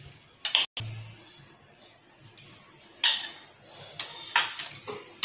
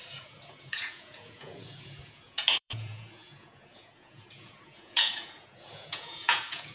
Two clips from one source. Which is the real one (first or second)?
first